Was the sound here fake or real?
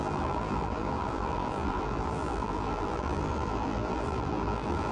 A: fake